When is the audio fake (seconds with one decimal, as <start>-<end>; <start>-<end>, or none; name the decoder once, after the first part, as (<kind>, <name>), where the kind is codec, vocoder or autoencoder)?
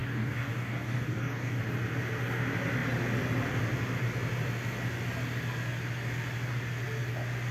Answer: 0.0-1.6 (codec, DAC)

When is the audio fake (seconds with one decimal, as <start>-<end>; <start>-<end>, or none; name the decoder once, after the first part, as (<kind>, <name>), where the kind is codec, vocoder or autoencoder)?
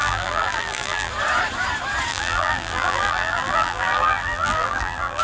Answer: 0.0-1.1 (vocoder, BigVGAN v2); 2.1-5.2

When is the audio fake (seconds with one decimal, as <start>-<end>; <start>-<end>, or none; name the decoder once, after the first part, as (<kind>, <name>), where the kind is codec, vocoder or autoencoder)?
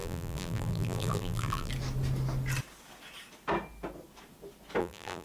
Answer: 0.0-1.7 (vocoder, BigVGAN v2); 4.8-5.2